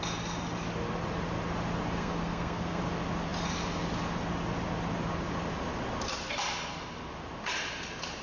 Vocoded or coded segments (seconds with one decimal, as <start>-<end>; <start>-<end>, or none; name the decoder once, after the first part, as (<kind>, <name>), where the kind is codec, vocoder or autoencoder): 2.0-2.8 (codec, SNAC)